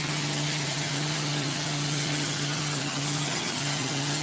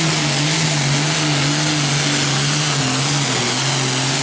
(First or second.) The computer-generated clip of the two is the first